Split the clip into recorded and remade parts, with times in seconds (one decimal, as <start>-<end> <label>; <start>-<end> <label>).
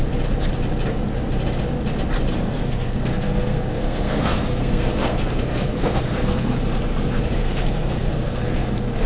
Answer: 0.0-2.3 recorded; 2.3-6.6 remade; 6.6-7.4 recorded; 7.4-9.1 remade